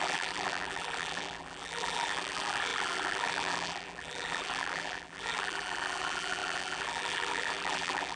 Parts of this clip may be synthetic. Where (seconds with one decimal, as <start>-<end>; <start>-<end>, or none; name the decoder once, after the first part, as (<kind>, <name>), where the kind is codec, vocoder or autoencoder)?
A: 0.0-8.2 (vocoder, BigVGAN v2)